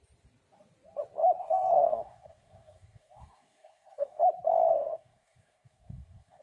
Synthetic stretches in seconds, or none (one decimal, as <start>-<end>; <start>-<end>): 1.4-4.2; 4.7-6.4